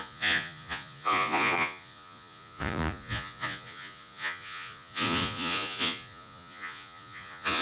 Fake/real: fake